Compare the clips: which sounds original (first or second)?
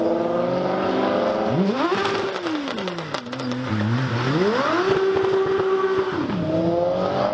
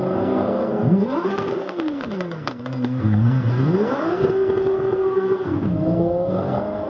first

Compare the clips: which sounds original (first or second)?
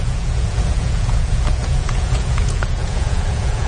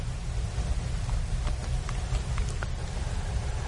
second